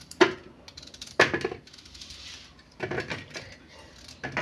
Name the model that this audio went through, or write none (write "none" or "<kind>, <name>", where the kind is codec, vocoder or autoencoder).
none